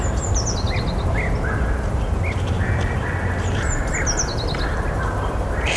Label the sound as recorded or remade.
recorded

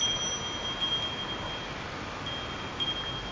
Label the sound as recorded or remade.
recorded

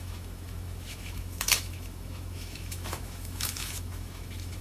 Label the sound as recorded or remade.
remade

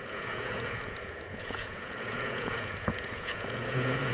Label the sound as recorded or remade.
remade